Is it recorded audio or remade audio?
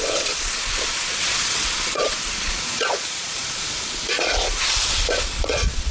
remade